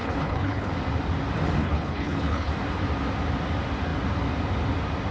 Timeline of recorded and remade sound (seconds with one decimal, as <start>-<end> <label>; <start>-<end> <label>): 0.0-0.7 remade; 0.7-1.6 recorded; 1.6-2.5 remade; 2.5-5.1 recorded